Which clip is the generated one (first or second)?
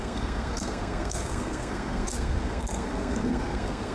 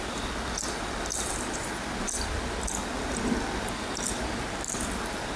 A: first